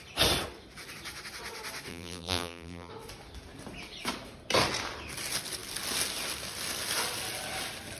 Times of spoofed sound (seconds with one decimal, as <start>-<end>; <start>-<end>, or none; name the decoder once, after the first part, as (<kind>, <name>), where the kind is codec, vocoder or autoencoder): 1.9-2.9 (vocoder, BigVGAN v2)